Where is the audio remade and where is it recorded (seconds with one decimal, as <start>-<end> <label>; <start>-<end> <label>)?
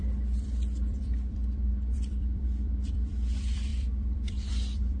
0.0-5.0 remade